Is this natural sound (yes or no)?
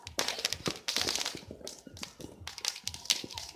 yes